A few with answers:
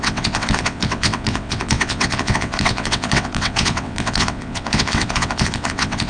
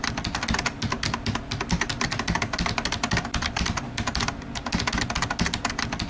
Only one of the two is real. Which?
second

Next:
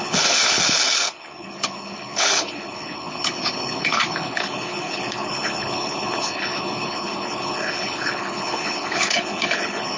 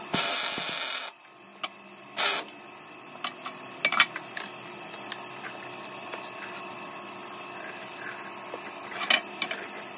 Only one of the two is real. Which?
second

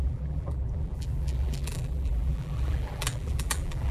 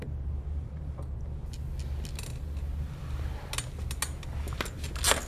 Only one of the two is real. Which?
second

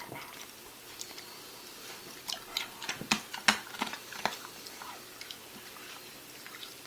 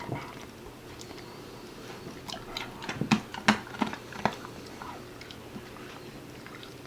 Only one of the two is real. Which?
second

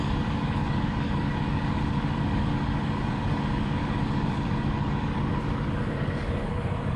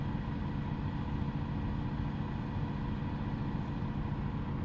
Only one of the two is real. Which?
second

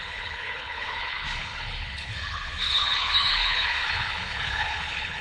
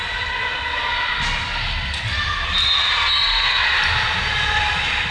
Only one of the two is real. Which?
second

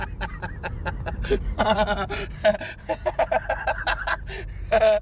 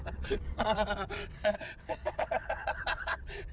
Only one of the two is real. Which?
first